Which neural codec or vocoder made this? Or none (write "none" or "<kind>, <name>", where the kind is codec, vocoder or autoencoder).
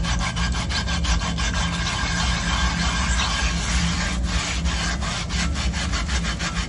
none